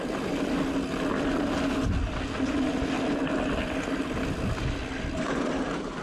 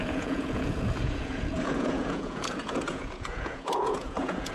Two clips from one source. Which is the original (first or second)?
first